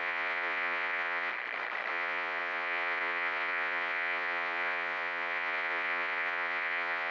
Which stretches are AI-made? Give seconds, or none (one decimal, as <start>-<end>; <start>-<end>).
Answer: 0.0-1.3; 1.9-7.1